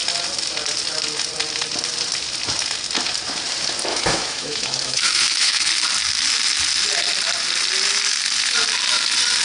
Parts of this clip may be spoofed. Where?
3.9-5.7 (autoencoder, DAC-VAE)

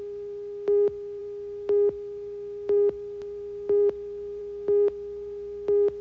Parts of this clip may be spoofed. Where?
none

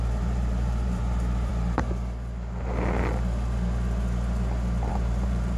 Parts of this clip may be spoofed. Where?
0.0-1.5 (vocoder, BigVGAN v2); 4.9-5.6

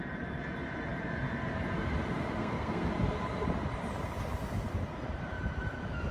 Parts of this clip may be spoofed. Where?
2.4-2.9 (codec, SNAC)